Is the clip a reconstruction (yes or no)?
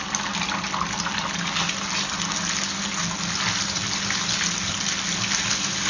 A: no